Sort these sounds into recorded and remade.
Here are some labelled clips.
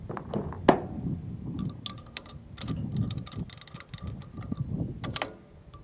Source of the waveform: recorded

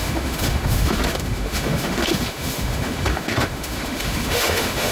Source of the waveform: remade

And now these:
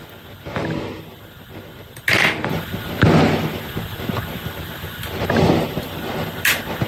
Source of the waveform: recorded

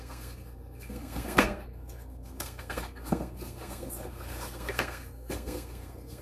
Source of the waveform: remade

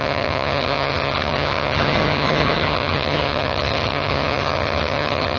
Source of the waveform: remade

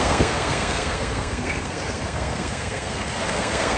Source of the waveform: remade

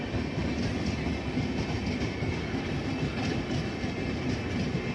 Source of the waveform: recorded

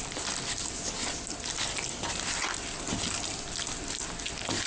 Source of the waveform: recorded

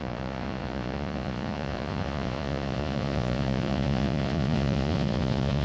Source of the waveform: remade